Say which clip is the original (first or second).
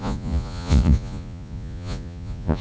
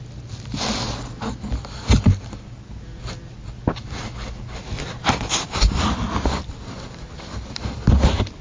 second